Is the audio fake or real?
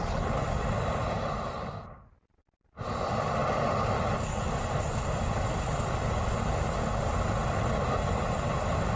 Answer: real